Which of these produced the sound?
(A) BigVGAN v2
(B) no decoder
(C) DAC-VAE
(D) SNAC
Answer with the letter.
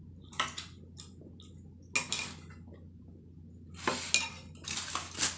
B